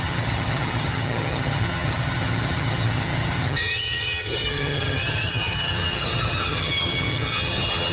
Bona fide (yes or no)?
no